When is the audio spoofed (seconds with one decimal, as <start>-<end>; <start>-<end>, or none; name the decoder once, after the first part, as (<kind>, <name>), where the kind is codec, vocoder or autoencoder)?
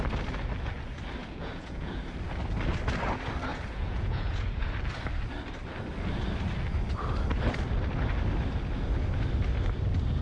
1.2-2.0 (vocoder, Vocos); 3.5-4.7